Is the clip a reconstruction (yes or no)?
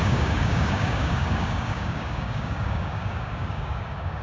yes